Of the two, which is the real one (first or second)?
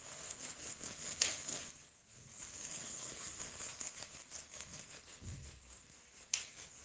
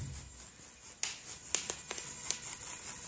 second